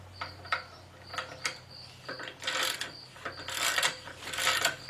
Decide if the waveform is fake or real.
real